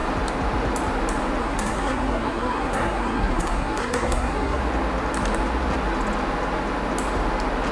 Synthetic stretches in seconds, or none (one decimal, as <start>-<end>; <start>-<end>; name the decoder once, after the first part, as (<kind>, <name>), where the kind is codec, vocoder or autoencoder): 1.4-4.6 (codec, SNAC)